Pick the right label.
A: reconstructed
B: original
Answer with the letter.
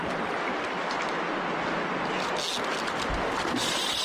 B